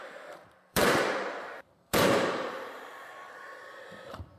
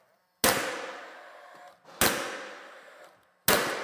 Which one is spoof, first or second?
first